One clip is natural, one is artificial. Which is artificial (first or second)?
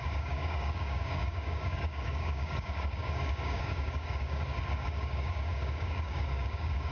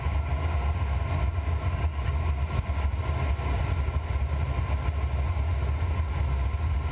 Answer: first